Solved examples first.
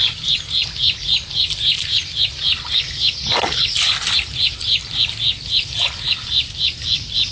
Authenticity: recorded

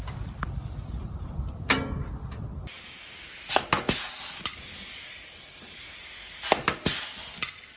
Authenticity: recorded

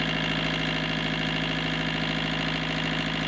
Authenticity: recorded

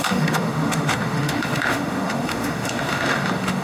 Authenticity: remade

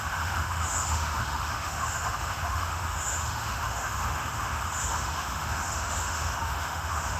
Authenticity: remade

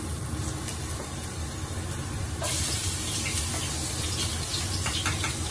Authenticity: recorded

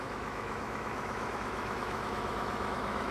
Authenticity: remade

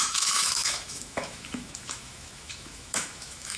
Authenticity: remade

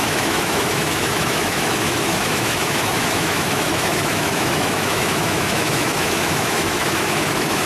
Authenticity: remade